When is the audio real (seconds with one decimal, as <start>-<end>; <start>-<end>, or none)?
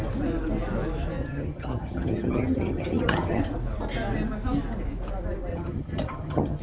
0.0-1.2; 3.4-5.5